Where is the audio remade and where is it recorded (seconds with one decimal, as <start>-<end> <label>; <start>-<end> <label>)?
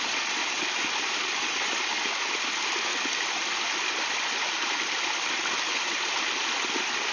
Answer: 0.0-7.1 recorded